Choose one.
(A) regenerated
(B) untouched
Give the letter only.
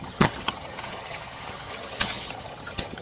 A